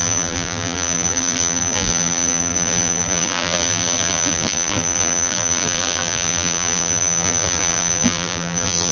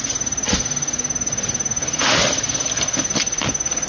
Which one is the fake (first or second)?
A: first